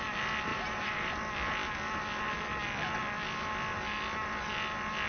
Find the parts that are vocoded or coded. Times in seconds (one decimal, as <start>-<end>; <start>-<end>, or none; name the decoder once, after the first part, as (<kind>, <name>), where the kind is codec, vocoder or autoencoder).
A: 0.5-1.1 (vocoder, BigVGAN v2)